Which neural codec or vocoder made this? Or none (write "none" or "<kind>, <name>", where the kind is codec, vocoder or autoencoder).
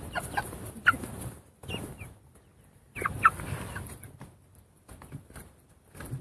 none